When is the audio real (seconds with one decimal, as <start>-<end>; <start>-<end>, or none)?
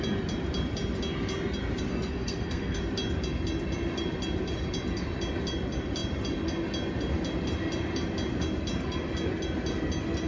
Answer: 0.0-1.9; 2.8-10.3